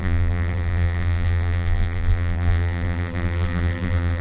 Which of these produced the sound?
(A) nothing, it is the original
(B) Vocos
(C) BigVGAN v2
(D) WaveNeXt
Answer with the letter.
C